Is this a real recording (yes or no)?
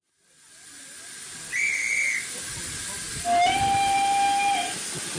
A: yes